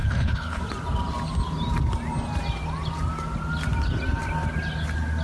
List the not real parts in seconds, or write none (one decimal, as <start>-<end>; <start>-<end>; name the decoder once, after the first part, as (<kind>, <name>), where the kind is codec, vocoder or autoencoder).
0.0-0.6 (codec, HILCodec)